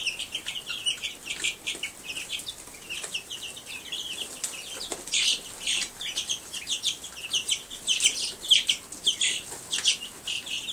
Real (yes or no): yes